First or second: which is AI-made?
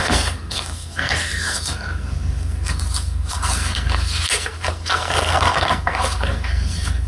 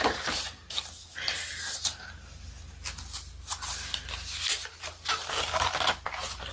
first